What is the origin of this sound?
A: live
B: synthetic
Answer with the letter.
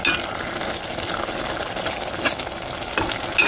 A